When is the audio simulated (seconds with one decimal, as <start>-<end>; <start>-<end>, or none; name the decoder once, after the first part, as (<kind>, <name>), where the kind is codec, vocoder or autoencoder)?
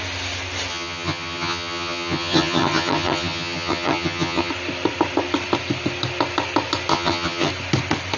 0.7-4.5 (vocoder, HiFi-GAN); 6.9-7.5